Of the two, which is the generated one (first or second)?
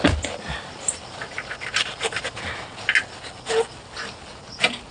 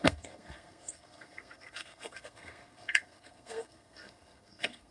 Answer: second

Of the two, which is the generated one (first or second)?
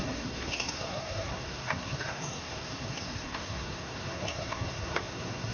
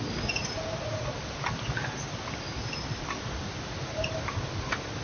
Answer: first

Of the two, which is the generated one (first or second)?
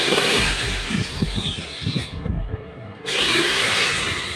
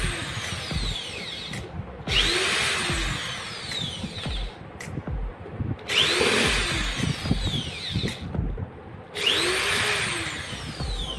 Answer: first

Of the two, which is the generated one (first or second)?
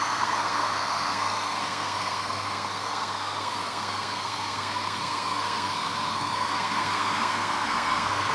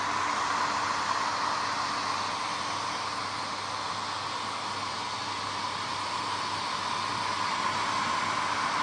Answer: first